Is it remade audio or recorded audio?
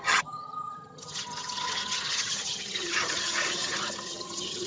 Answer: remade